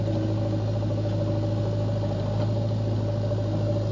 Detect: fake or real real